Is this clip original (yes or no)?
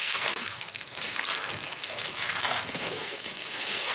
no